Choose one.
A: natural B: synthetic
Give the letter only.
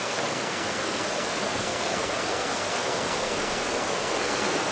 B